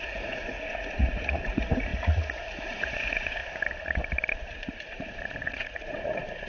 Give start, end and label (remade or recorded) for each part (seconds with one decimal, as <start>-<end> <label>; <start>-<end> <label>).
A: 0.0-3.4 remade; 3.4-4.3 recorded; 4.3-6.5 remade